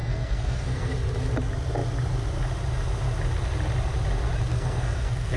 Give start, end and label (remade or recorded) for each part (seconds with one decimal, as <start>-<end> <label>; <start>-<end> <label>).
0.0-0.9 remade; 0.9-4.5 recorded; 4.5-5.4 remade